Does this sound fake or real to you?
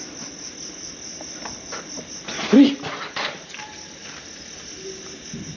real